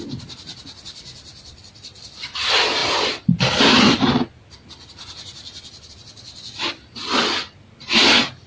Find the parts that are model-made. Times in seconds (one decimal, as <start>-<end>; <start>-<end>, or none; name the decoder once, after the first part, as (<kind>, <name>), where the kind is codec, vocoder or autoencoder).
none